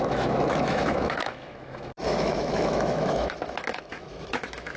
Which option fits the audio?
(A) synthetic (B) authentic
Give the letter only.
A